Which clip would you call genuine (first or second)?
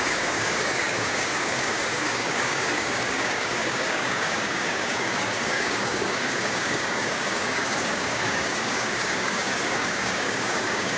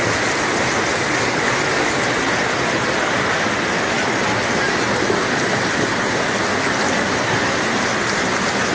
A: second